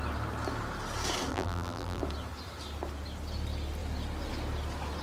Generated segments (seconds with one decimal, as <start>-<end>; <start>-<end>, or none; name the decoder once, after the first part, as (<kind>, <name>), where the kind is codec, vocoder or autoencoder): 1.3-2.0 (vocoder, BigVGAN v2)